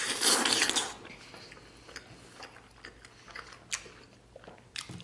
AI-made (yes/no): no